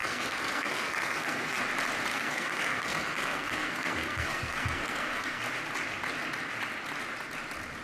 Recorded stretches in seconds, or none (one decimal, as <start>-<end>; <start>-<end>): 1.6-2.1; 5.4-7.8